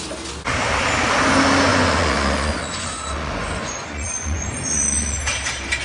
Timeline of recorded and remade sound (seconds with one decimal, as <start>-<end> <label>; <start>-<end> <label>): 0.0-1.7 recorded; 1.7-5.2 remade; 5.2-5.8 recorded